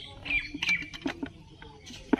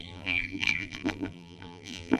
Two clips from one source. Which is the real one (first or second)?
first